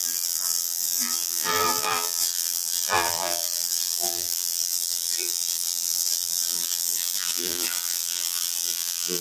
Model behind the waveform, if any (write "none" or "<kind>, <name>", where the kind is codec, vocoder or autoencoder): vocoder, BigVGAN v2